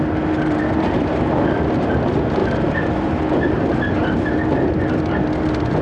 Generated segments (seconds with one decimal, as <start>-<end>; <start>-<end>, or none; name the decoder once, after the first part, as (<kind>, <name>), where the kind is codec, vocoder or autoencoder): 0.0-5.8 (vocoder, BigVGAN v2)